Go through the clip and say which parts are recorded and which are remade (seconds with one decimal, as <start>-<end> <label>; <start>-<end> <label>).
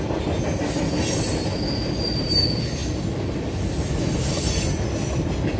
0.0-5.6 recorded